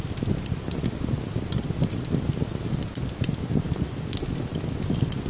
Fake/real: real